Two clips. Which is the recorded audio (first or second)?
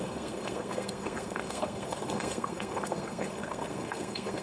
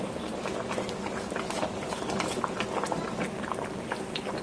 second